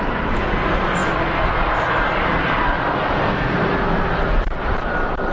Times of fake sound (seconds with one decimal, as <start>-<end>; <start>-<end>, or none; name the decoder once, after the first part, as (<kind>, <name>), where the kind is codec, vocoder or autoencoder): none

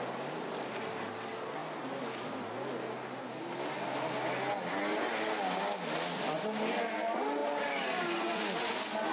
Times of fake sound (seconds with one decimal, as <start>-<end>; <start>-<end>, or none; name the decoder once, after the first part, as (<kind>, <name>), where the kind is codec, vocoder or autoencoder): none

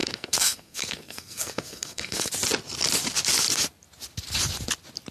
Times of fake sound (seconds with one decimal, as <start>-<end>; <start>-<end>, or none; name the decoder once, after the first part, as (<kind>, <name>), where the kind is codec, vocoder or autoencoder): 0.0-2.3 (codec, SNAC)

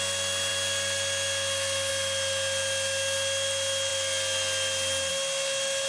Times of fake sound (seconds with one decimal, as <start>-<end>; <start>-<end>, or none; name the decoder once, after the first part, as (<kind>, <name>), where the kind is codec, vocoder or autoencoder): none

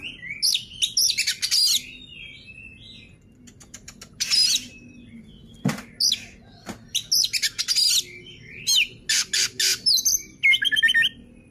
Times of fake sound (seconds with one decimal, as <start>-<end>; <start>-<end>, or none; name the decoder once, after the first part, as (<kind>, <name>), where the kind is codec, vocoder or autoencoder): 9.7-10.5 (vocoder, BigVGAN v2)

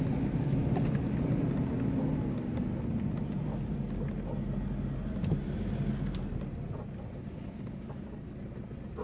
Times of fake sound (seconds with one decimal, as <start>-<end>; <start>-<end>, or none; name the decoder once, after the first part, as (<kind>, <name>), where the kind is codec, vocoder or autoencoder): none

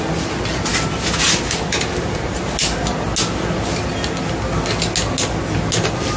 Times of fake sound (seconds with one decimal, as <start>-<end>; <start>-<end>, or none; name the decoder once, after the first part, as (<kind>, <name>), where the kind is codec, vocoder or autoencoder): none

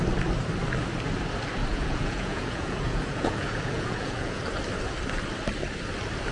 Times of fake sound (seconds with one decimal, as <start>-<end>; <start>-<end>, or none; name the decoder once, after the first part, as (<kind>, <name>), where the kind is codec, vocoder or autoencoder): 1.7-4.4 (vocoder, Vocos)